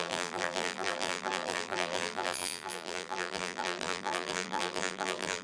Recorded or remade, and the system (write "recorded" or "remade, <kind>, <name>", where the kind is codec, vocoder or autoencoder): remade, vocoder, BigVGAN v2